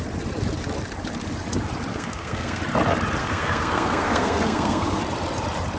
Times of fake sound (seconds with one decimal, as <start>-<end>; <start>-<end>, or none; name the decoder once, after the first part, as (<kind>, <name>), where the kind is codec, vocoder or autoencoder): 1.9-2.6 (codec, SNAC); 3.2-5.0